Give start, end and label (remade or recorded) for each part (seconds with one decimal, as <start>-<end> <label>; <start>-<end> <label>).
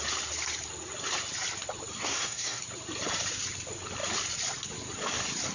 0.0-2.0 recorded; 2.0-2.6 remade; 2.6-5.5 recorded